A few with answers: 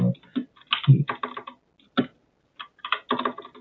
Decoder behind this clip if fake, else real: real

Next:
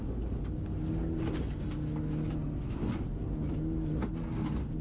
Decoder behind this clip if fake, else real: real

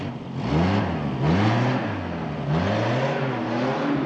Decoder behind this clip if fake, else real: real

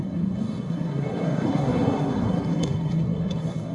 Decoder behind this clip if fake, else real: fake, codec, SNAC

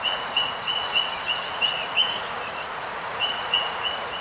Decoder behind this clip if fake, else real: fake, vocoder, Vocos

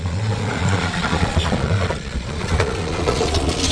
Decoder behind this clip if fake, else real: fake, vocoder, Vocos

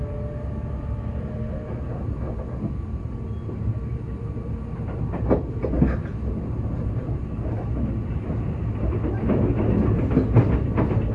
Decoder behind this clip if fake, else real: real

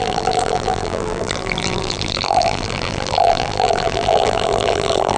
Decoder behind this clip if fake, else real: fake, vocoder, BigVGAN v2